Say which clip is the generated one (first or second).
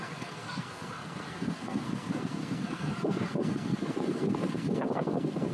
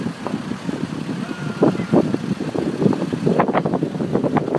first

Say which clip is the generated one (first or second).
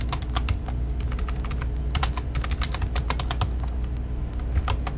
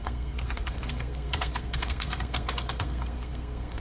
second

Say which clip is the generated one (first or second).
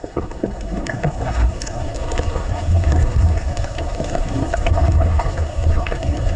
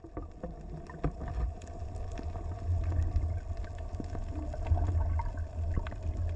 first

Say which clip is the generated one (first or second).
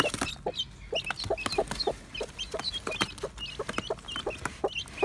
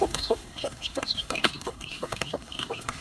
second